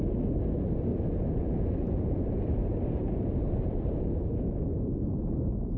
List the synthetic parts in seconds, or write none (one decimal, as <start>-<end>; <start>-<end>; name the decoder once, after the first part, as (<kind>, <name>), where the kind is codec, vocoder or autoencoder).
0.9-4.4 (vocoder, BigVGAN v2)